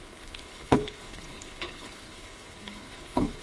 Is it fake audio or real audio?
fake